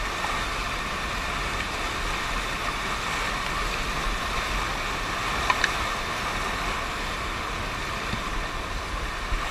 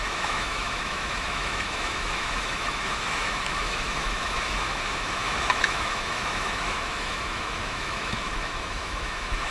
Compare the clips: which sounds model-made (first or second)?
second